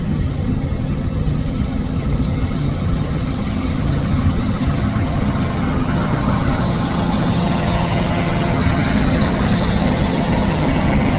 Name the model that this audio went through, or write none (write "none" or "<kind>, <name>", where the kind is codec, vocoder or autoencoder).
vocoder, HiFi-GAN